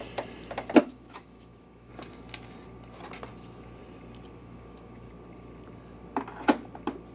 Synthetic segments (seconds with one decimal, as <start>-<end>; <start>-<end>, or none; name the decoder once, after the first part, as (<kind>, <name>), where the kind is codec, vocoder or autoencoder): 0.8-1.9 (autoencoder, DAC-VAE); 4.4-5.1